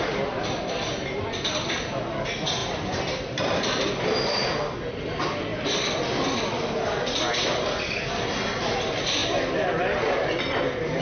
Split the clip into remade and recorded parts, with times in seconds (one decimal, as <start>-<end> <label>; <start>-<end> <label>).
0.0-11.0 recorded